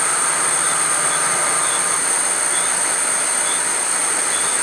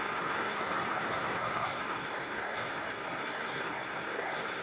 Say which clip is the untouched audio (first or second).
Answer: first